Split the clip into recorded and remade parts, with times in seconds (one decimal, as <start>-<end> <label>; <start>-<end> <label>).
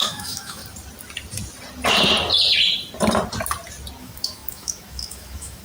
0.0-0.6 remade; 0.6-4.0 recorded; 4.0-5.6 remade